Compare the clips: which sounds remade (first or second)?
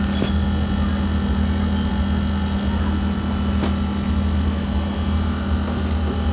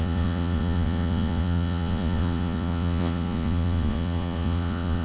second